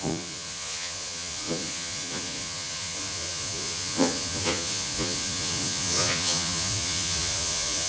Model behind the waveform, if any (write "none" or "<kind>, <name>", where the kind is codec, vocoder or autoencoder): vocoder, Vocos